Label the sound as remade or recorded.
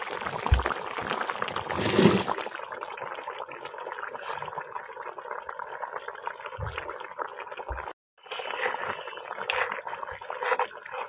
recorded